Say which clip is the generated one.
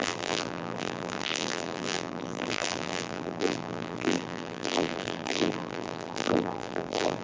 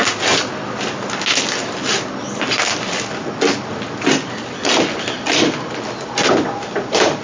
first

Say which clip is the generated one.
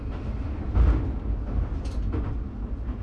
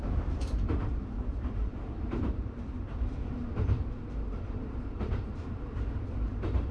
second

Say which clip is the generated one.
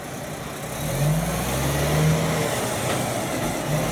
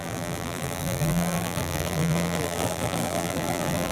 second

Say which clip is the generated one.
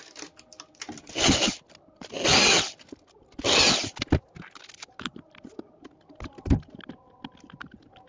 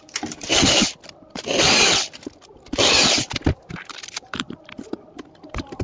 second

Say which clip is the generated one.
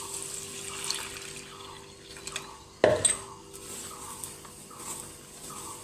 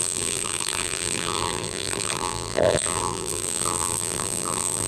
second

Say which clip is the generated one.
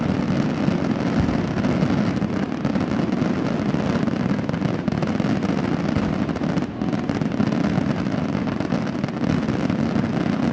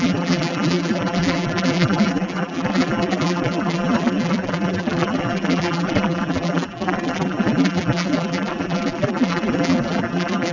second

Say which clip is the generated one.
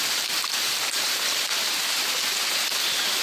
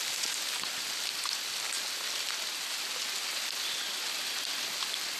first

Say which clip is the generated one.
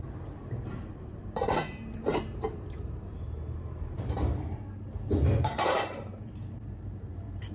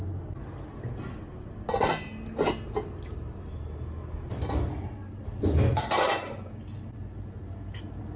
first